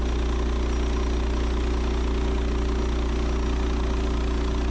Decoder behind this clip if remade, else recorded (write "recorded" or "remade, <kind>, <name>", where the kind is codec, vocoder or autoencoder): recorded